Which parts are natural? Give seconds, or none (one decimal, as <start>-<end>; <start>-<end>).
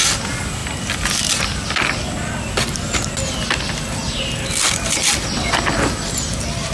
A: 0.0-6.7